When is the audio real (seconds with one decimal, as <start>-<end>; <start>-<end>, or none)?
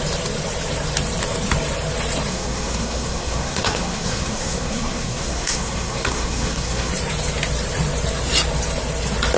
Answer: 0.0-2.3; 6.9-9.4